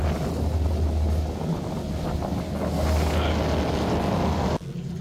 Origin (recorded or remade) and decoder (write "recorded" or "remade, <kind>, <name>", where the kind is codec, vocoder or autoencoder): recorded